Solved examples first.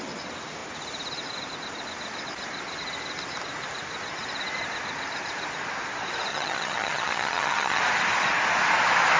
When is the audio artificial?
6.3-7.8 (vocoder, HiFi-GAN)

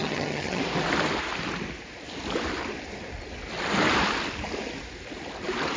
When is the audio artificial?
0.0-0.6 (vocoder, HiFi-GAN)

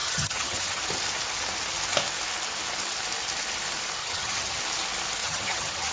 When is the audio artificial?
0.0-0.8 (vocoder, HiFi-GAN); 4.0-4.6; 5.2-5.9

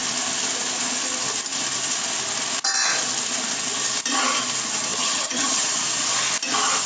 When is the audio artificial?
4.9-5.6 (vocoder, HiFi-GAN)